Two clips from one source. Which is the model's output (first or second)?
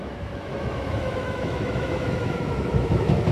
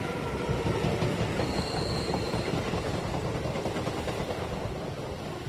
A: first